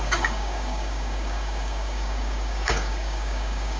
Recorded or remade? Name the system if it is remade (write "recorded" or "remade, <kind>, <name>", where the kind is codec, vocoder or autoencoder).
remade, codec, DAC